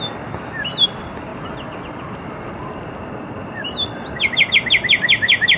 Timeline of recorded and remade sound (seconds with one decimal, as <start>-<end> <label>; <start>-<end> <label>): 0.0-5.6 recorded